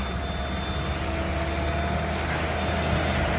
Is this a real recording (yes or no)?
yes